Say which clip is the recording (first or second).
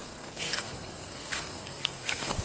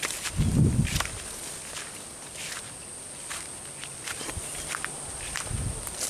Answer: second